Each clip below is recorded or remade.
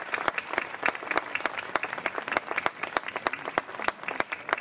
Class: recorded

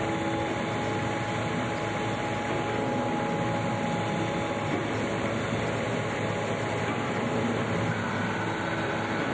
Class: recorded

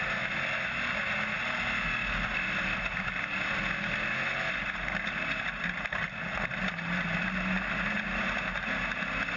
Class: recorded